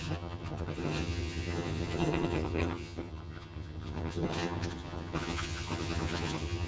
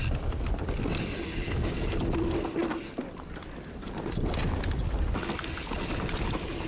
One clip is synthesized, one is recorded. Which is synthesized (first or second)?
first